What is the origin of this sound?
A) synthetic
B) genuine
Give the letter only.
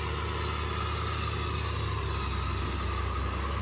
B